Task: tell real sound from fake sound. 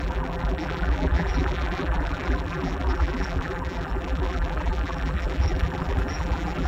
fake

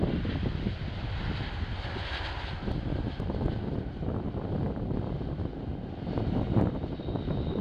real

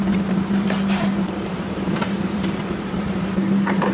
fake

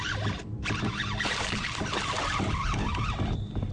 fake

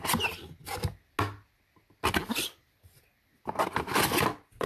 real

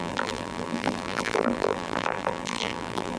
fake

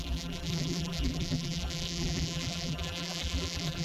fake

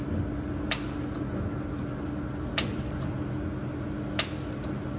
real